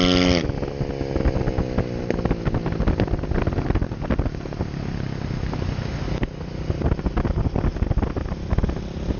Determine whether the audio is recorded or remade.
recorded